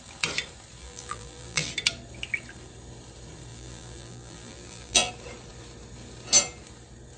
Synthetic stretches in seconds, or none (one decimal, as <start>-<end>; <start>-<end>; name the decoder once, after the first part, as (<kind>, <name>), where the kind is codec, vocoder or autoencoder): 0.8-1.7 (vocoder, BigVGAN v2); 3.5-5.1